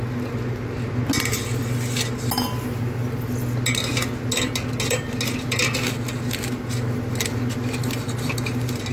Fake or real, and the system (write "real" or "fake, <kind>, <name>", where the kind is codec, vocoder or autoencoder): real